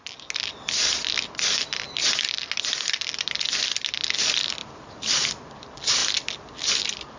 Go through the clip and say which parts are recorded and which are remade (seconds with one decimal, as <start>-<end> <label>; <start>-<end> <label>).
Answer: 0.0-4.6 recorded; 4.6-5.3 remade; 5.3-6.0 recorded; 6.0-6.7 remade; 6.7-7.2 recorded